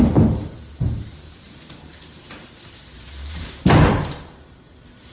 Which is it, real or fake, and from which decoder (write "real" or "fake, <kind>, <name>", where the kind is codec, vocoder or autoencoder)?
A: fake, vocoder, BigVGAN v2